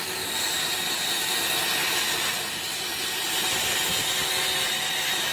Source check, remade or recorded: recorded